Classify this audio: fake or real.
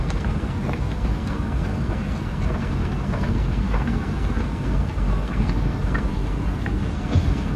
fake